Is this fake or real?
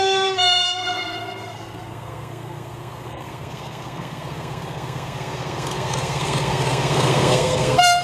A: fake